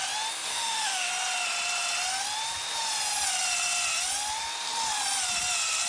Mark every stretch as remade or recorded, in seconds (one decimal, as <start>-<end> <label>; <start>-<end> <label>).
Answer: 0.0-0.5 recorded; 0.5-1.1 remade; 1.1-5.9 recorded